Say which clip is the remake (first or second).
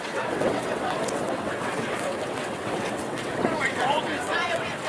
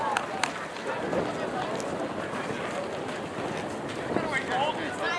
first